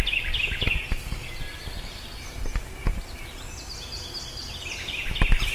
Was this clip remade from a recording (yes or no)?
no